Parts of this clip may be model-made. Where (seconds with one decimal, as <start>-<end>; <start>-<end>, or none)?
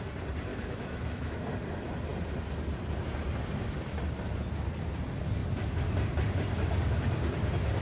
0.5-1.4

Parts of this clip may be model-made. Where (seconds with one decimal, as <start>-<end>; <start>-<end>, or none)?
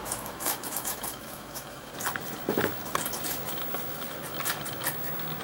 0.0-1.9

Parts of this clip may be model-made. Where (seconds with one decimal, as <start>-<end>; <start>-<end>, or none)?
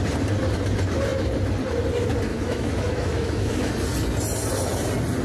2.3-3.7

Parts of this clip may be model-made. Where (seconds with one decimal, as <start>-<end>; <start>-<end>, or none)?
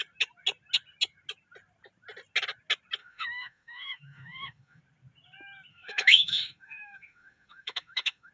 3.0-4.8; 5.7-8.3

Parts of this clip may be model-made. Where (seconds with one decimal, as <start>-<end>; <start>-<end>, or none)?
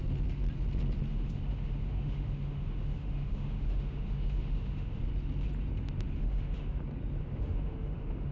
1.1-5.0; 6.2-6.8; 7.2-8.3